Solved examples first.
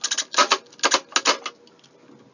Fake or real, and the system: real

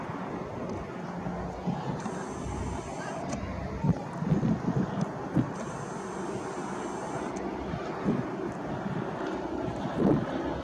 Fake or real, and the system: real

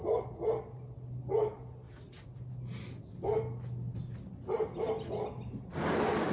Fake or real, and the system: real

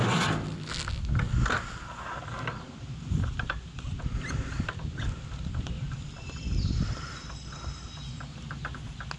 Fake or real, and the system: real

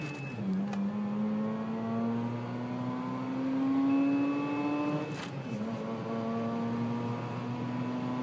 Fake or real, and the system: real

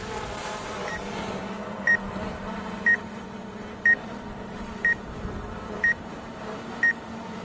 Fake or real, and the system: fake, vocoder, BigVGAN v2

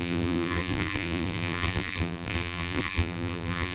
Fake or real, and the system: fake, vocoder, BigVGAN v2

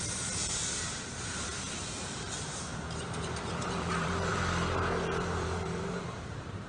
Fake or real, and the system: fake, vocoder, BigVGAN v2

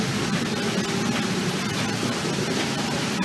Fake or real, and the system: real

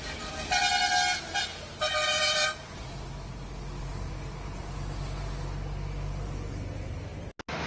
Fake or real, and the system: real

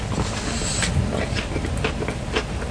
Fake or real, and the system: real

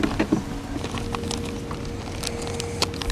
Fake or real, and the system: real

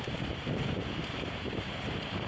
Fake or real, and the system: fake, vocoder, BigVGAN v2